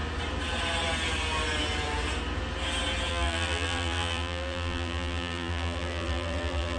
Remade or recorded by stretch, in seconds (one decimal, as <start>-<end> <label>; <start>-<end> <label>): 0.0-3.1 recorded; 3.1-6.8 remade